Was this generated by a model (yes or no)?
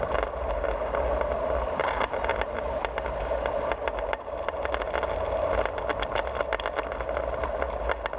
no